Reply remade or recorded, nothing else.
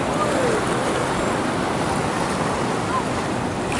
recorded